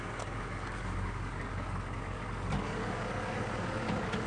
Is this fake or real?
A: fake